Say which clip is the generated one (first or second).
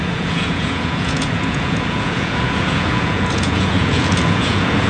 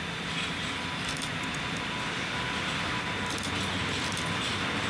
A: first